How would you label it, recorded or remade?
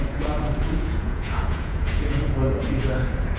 remade